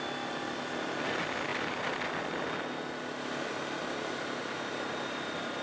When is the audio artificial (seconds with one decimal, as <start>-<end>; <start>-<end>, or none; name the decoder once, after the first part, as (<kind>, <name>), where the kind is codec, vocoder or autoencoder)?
none